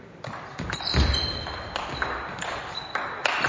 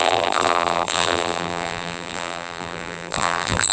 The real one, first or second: first